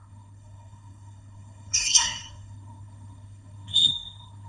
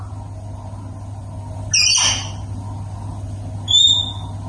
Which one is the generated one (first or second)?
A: first